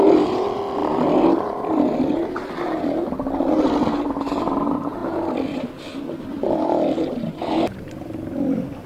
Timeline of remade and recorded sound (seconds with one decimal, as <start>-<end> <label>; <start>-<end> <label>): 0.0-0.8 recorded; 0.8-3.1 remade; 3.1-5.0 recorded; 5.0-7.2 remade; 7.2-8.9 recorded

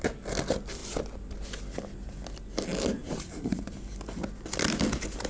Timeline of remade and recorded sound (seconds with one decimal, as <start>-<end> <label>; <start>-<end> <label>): 0.0-3.0 recorded; 3.0-3.6 remade; 3.6-5.3 recorded

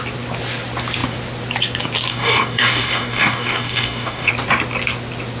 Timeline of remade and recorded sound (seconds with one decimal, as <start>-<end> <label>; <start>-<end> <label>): 0.0-2.1 recorded; 2.1-4.3 remade; 4.3-5.4 recorded